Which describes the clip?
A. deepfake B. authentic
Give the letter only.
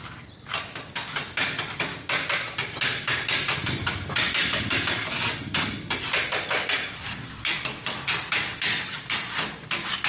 B